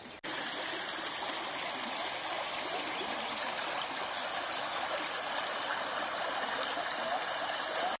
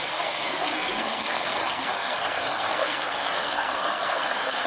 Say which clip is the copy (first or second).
second